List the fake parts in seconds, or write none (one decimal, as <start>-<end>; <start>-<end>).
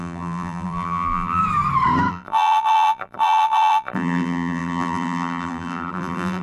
0.0-1.4; 2.1-6.4